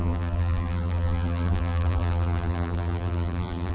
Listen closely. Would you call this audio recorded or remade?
remade